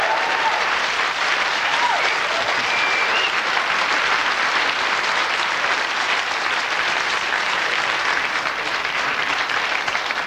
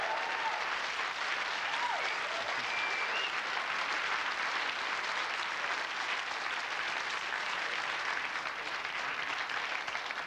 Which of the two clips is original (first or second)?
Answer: second